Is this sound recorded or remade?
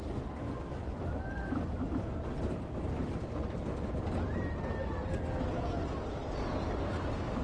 recorded